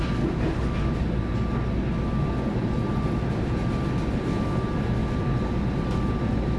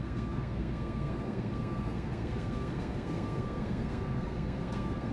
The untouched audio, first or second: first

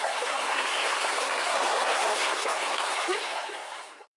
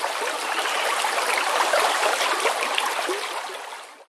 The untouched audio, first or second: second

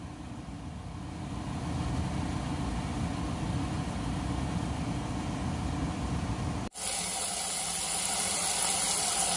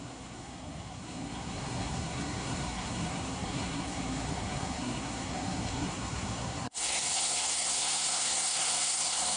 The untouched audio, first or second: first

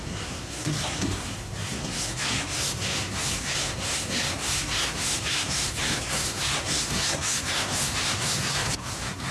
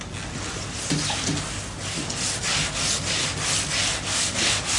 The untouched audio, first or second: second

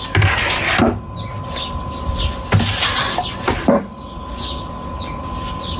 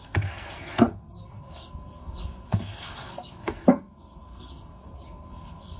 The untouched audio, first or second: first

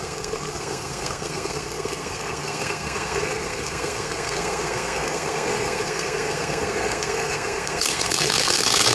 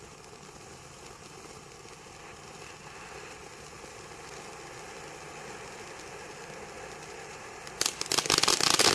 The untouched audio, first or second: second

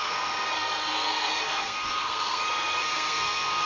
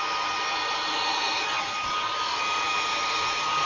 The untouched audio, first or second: second